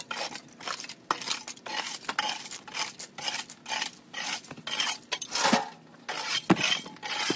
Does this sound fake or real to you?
real